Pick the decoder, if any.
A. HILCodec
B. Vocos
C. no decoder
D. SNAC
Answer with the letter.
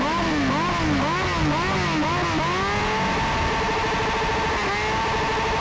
C